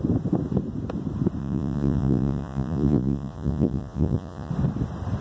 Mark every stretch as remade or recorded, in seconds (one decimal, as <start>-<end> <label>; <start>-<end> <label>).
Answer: 0.0-1.4 recorded; 1.4-4.5 remade; 4.5-5.2 recorded